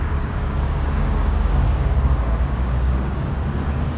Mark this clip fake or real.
fake